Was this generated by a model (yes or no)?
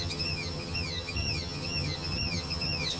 yes